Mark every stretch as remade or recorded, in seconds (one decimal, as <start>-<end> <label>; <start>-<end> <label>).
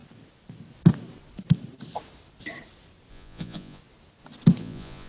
0.0-3.1 recorded; 3.1-3.8 remade; 3.8-4.6 recorded; 4.6-5.1 remade